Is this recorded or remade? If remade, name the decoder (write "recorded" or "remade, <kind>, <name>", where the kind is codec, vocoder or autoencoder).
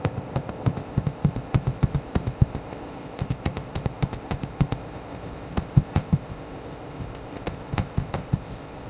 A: remade, codec, ZipCodec